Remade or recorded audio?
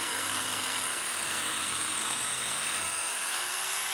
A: remade